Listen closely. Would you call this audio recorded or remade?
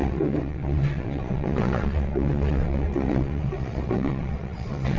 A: remade